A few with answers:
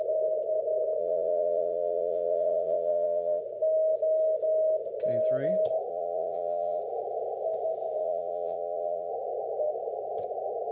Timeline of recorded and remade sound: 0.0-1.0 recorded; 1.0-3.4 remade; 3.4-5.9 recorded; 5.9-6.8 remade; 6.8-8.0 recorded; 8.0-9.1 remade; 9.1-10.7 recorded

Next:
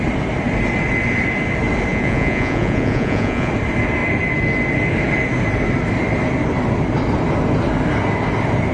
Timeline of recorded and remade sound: 0.0-1.9 recorded; 1.9-3.5 remade; 3.5-8.7 recorded

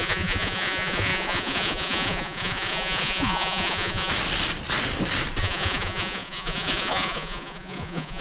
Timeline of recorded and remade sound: 0.0-4.1 remade; 4.1-5.4 recorded; 5.4-8.2 remade

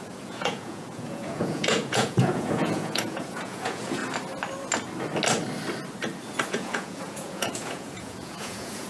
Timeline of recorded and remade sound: 0.0-4.0 remade; 4.0-6.5 recorded; 6.5-8.9 remade

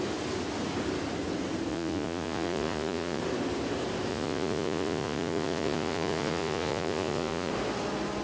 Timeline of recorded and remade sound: 0.0-1.7 recorded; 1.7-3.2 remade; 3.2-4.1 recorded; 4.1-7.5 remade; 7.5-8.2 recorded

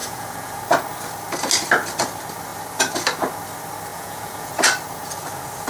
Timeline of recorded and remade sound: 0.0-0.6 remade; 0.6-3.9 recorded; 3.9-4.5 remade; 4.5-5.7 recorded

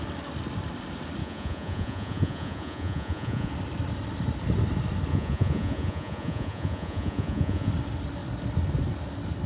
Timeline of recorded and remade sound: 0.0-1.2 recorded; 1.2-3.5 remade; 3.5-5.1 recorded; 5.1-7.7 remade; 7.7-9.5 recorded